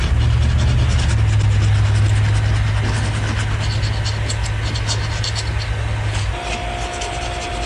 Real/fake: real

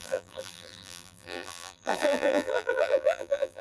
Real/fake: fake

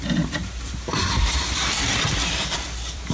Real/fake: fake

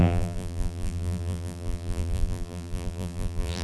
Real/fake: fake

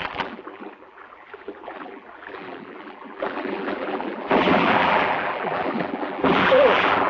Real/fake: fake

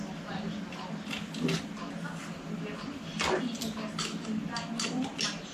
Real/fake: real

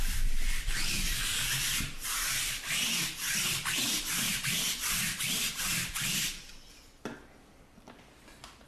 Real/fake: fake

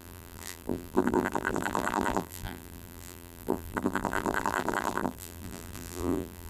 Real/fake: fake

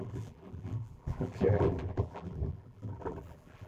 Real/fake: fake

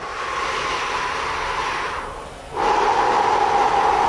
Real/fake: real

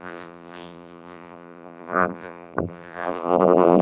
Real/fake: fake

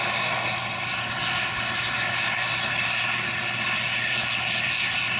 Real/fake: real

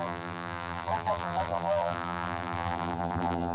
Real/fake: fake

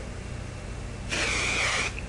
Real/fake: real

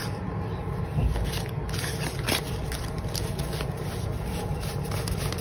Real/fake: fake